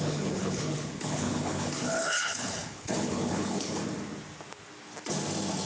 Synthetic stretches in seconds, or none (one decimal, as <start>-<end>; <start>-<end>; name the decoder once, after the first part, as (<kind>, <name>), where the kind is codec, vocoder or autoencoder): 0.0-3.8 (codec, HILCodec)